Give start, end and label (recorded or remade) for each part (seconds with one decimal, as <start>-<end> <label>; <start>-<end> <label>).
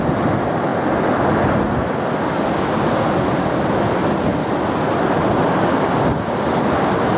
0.0-7.2 recorded